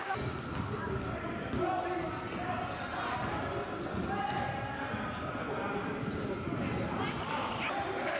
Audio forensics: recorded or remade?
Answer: recorded